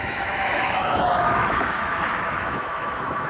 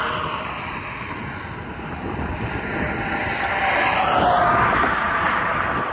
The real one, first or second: second